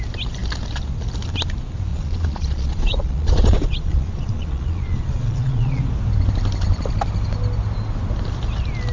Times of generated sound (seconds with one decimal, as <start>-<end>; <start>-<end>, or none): 1.9-5.8